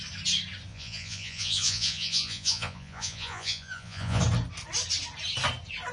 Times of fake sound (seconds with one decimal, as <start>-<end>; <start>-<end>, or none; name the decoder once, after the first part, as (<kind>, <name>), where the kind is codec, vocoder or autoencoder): 0.7-4.2 (vocoder, Vocos)